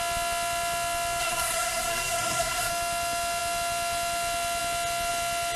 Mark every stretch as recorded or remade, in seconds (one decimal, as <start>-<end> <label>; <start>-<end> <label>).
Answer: 0.0-1.2 recorded; 1.2-2.7 remade; 2.7-5.6 recorded

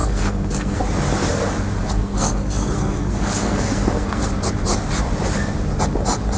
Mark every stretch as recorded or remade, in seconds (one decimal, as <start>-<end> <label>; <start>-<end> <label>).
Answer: 0.0-0.8 remade; 0.8-1.8 recorded; 1.8-4.3 remade; 4.3-6.4 recorded

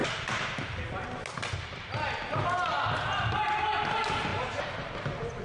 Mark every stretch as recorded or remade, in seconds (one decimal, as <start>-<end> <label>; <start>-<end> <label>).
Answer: 0.0-4.3 recorded; 4.3-5.4 remade

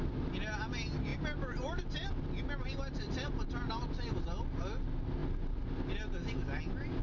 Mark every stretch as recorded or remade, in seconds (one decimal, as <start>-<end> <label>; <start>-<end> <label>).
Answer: 0.0-7.0 recorded

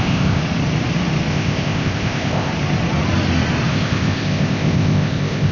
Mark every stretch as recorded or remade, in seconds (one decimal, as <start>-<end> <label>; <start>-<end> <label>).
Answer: 0.0-0.4 remade; 0.4-1.3 recorded; 1.3-2.5 remade; 2.5-3.7 recorded; 3.7-5.5 remade

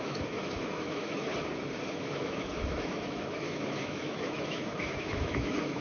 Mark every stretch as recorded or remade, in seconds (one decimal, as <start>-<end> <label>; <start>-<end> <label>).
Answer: 0.0-1.3 remade; 1.3-1.9 recorded; 1.9-5.8 remade